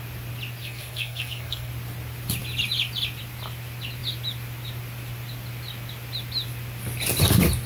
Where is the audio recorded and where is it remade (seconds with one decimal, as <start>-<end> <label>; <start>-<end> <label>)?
0.0-0.6 recorded; 0.6-1.7 remade; 1.7-7.7 recorded

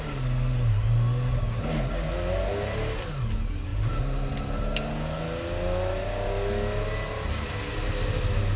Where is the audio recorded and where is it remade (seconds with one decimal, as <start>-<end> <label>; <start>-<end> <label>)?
0.0-8.6 recorded

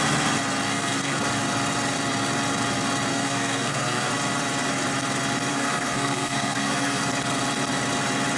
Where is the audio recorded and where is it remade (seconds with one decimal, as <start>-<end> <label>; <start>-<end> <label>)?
0.0-0.7 recorded; 0.7-1.2 remade; 1.2-3.1 recorded; 3.1-4.1 remade; 4.1-5.5 recorded; 5.5-7.0 remade; 7.0-8.4 recorded

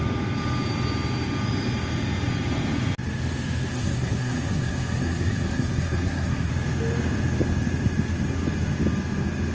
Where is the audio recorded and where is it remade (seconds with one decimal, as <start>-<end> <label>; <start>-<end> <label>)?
0.0-3.7 recorded; 3.7-6.5 remade; 6.5-9.5 recorded

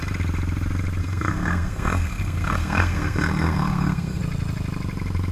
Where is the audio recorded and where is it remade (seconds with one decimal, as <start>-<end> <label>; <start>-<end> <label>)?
0.0-1.0 recorded; 1.0-4.2 remade; 4.2-5.3 recorded

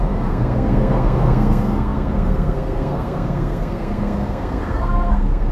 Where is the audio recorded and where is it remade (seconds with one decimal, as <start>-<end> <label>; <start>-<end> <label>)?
0.0-5.5 remade

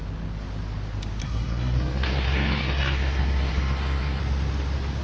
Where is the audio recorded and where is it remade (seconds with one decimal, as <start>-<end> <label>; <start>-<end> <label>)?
0.0-1.2 recorded; 1.2-4.2 remade; 4.2-5.0 recorded